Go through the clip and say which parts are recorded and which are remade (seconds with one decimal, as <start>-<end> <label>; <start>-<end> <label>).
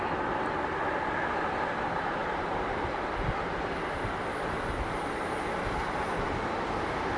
0.0-7.2 recorded